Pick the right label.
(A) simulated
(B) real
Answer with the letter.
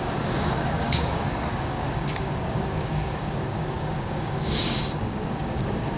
A